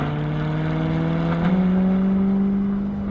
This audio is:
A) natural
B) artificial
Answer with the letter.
A